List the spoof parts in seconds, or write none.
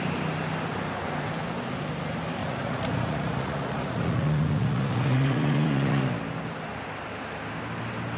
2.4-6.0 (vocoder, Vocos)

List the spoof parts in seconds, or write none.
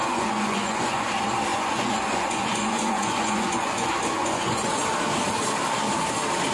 0.0-1.1 (vocoder, Vocos); 1.5-4.8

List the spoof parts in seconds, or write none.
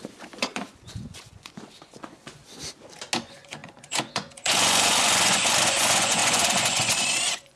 0.0-2.4 (vocoder, Vocos); 3.2-7.6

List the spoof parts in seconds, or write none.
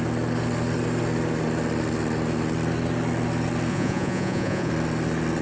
3.7-4.7 (vocoder, Vocos)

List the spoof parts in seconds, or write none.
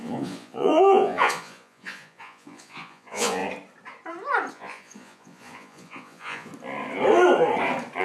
0.0-3.4 (vocoder, Vocos); 4.5-6.5